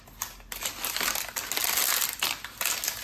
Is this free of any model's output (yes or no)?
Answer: yes